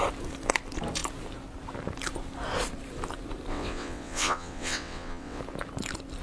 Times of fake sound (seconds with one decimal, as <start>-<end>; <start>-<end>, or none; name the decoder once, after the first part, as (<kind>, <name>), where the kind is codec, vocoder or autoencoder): 3.5-5.4 (vocoder, WaveNeXt)